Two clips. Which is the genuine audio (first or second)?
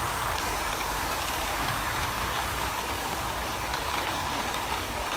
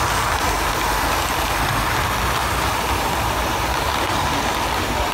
second